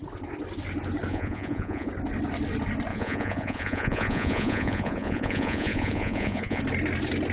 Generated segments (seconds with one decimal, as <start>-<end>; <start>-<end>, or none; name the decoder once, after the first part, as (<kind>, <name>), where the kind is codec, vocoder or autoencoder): 1.1-1.9 (vocoder, Vocos); 2.9-6.6

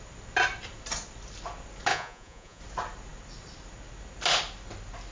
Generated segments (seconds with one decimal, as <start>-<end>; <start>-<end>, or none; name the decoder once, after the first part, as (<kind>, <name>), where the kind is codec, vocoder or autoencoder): 1.9-2.6 (vocoder, Vocos)

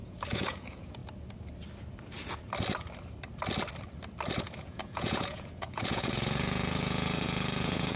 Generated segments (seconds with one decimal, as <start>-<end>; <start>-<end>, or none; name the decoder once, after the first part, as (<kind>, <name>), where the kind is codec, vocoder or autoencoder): 0.0-1.0 (vocoder, Vocos); 4.4-8.0

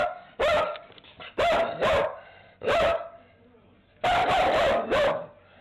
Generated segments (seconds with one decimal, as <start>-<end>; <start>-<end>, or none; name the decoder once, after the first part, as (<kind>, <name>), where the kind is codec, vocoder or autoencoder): none

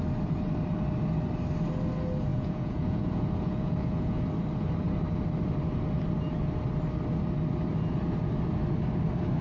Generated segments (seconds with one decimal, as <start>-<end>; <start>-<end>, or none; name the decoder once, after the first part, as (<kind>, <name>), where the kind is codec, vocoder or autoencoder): 2.3-4.2 (vocoder, Vocos)

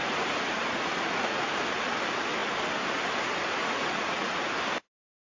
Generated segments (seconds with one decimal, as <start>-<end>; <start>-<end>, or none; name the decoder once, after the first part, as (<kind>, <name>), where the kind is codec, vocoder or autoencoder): 0.0-1.7 (vocoder, Vocos); 3.6-4.6